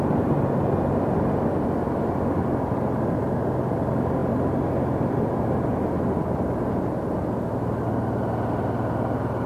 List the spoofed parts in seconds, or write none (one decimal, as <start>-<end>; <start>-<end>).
none